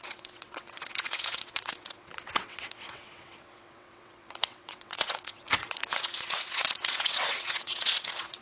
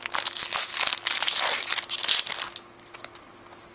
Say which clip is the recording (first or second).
second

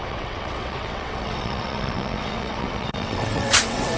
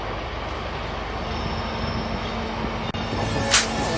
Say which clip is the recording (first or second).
second